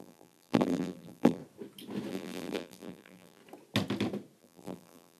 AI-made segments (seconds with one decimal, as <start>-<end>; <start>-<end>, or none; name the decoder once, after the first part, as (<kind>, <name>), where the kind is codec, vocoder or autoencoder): 0.0-1.4 (vocoder, BigVGAN v2); 2.1-3.4; 4.4-5.2

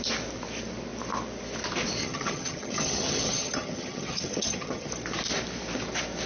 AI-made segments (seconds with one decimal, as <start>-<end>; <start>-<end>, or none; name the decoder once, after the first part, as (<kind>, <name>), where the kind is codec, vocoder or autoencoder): 2.0-4.9 (vocoder, HiFi-GAN)